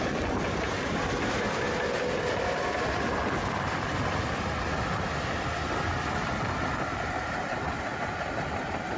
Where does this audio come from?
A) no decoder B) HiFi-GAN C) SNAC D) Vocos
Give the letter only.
A